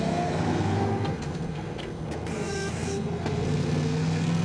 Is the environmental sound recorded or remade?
remade